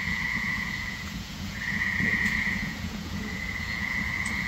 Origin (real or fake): fake